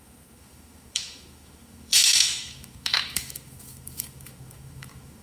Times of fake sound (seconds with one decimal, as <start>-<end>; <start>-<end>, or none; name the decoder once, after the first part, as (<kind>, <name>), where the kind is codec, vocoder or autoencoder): 0.0-5.2 (autoencoder, DAC-VAE)